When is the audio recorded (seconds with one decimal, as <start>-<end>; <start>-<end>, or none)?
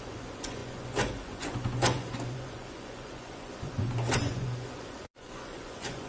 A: none